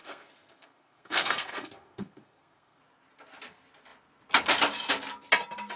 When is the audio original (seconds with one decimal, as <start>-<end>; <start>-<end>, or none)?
2.8-5.8